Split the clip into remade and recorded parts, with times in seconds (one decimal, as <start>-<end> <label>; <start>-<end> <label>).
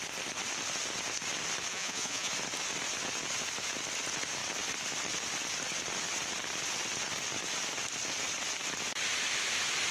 0.0-1.7 recorded; 1.7-2.3 remade; 2.3-9.9 recorded